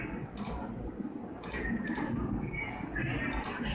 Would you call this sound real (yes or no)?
yes